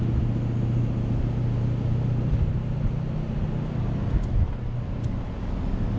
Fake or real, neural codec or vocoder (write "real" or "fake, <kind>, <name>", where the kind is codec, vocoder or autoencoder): real